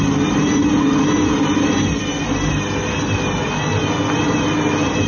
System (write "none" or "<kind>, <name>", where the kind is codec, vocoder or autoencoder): none